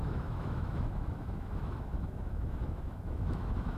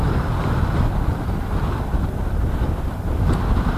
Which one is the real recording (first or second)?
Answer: second